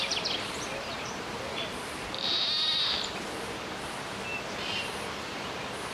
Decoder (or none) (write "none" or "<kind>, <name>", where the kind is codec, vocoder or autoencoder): vocoder, BigVGAN v2